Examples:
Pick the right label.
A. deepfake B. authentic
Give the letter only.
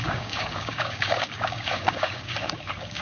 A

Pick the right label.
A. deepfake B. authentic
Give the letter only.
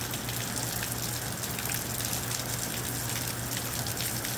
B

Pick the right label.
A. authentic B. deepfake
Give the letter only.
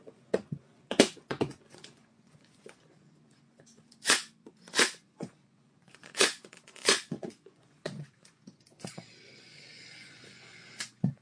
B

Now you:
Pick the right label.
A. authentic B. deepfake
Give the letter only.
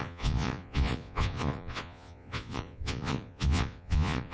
B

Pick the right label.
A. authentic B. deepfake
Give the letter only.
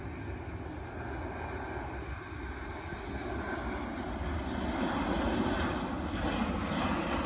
A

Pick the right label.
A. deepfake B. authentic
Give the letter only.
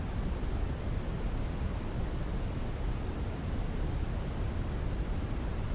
B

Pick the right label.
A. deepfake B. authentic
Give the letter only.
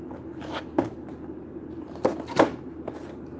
B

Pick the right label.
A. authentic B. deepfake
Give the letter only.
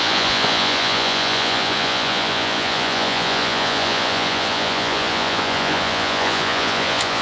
B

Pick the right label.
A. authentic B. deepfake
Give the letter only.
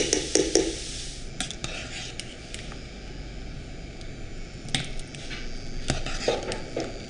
A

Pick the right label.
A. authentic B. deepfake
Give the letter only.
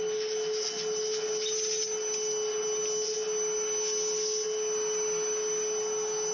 A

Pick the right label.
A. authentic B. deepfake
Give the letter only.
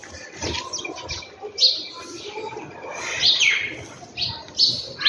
A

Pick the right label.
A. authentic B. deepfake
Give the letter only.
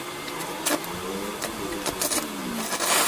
B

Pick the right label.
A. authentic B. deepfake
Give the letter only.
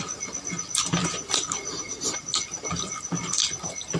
A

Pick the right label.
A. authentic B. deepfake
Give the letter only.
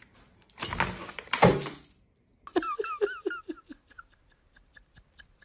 A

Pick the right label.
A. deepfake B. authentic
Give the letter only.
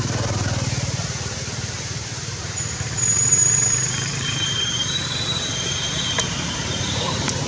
A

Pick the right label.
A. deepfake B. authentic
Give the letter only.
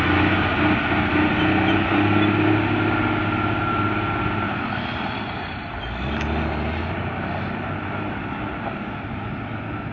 B